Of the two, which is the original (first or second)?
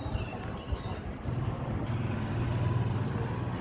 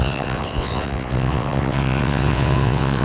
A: first